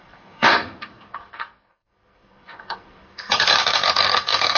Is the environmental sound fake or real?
fake